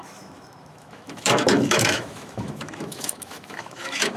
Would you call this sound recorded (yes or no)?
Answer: no